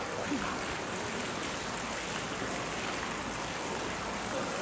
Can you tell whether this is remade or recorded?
recorded